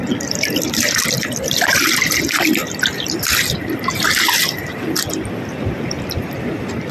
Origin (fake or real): fake